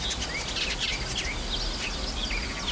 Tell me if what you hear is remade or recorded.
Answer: recorded